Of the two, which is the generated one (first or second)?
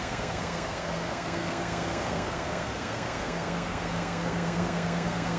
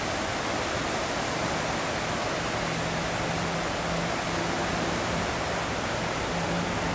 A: first